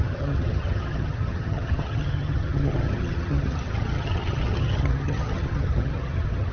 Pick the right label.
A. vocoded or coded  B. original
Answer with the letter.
A